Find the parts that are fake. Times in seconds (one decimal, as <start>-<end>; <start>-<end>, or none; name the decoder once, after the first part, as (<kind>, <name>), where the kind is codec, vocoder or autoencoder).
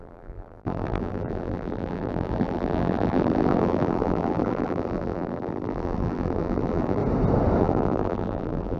0.0-7.0 (vocoder, BigVGAN v2); 7.6-8.8